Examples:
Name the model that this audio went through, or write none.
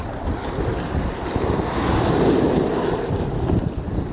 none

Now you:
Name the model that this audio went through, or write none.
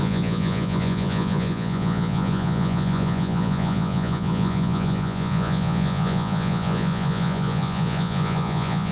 vocoder, Vocos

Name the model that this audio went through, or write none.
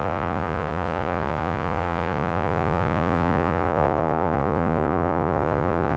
vocoder, Vocos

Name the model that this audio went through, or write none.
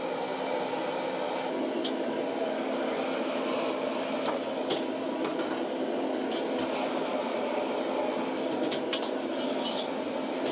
none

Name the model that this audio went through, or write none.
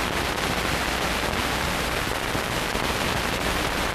none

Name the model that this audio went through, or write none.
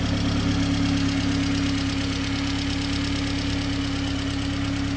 none